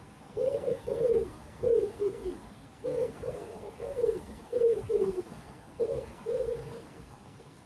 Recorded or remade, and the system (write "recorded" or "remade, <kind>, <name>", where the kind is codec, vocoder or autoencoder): remade, codec, SNAC